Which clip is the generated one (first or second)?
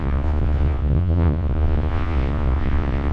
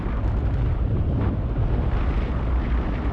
first